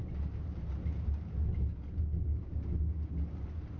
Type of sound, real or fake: real